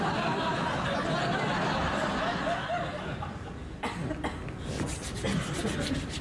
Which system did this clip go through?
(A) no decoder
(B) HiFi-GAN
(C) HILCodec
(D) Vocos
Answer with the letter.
A